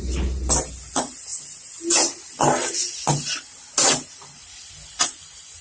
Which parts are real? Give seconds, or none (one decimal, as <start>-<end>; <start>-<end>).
0.0-5.6